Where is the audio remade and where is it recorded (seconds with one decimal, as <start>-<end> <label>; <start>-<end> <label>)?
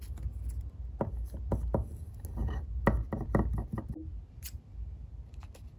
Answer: 0.0-5.8 recorded